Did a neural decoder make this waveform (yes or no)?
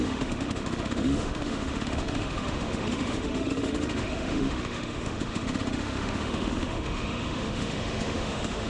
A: yes